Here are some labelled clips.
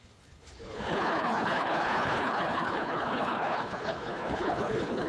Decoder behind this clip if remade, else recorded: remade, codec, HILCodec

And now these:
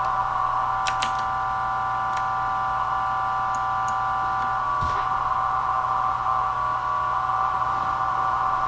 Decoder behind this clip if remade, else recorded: recorded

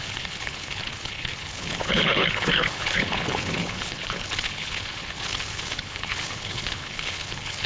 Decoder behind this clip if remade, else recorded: remade, codec, HILCodec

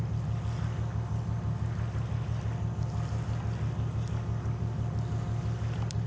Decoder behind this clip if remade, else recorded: recorded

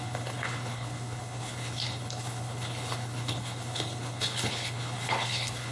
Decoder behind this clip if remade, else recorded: remade, codec, HILCodec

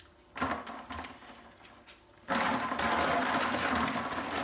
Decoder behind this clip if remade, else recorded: recorded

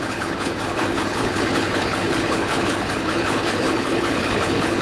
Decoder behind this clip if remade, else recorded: remade, codec, HILCodec